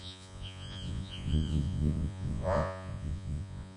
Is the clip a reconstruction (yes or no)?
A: yes